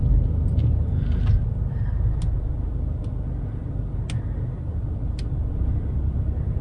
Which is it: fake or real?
real